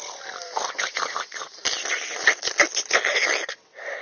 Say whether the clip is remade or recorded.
recorded